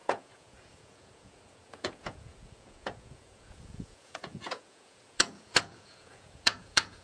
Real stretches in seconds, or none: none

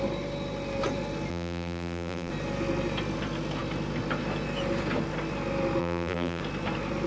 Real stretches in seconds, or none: 0.0-1.3; 2.3-5.8; 6.4-7.1